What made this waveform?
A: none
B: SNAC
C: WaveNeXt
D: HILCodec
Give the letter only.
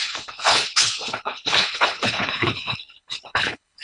D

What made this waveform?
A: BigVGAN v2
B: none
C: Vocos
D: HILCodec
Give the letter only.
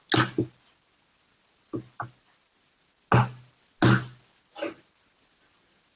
B